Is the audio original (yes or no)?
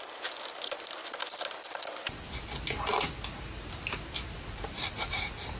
yes